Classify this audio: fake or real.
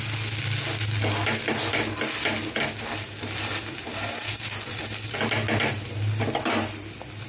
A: real